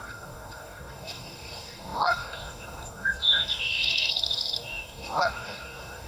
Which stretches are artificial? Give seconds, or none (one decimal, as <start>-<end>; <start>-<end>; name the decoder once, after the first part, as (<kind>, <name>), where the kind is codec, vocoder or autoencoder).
0.0-6.1 (codec, DAC)